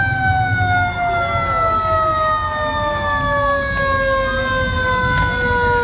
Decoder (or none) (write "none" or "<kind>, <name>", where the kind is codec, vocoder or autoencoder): none